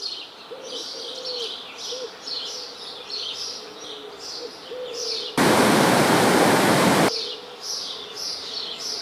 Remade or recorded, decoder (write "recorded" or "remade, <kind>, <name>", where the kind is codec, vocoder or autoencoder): recorded